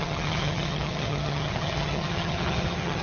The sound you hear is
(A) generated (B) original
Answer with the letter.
A